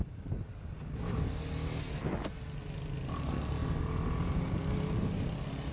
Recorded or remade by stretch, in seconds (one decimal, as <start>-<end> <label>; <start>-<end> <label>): 0.0-5.7 recorded

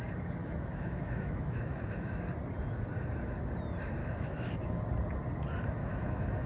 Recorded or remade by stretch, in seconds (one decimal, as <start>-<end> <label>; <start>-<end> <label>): 0.0-0.4 recorded; 0.4-2.2 remade; 2.2-4.0 recorded; 4.0-4.8 remade; 4.8-5.8 recorded; 5.8-6.5 remade

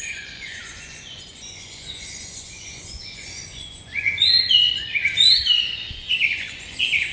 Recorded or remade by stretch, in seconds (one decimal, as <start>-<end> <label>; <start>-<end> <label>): 0.0-4.9 remade; 4.9-5.6 recorded; 5.6-7.1 remade

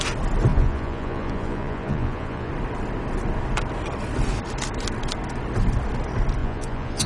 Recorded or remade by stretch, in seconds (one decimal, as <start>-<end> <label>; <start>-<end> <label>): 0.0-0.5 recorded; 0.5-2.5 remade; 2.5-6.4 recorded; 6.4-7.1 remade